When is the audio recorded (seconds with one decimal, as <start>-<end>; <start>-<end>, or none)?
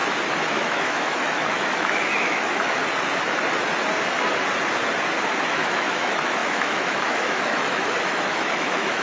0.0-0.5; 2.8-5.4